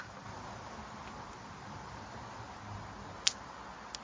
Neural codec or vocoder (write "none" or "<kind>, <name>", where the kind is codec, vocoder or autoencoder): none